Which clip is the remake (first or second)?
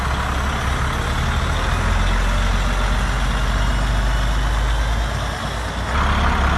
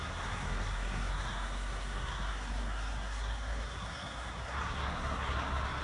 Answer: second